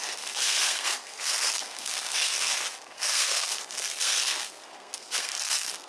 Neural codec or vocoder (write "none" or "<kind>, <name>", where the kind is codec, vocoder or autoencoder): codec, SNAC